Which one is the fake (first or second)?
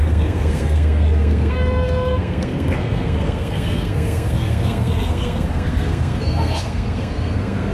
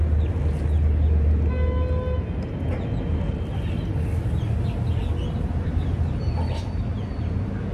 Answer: first